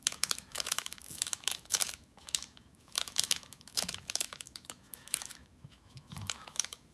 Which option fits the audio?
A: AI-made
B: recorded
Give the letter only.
A